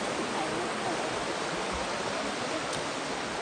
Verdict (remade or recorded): recorded